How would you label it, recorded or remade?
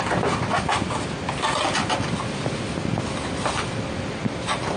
recorded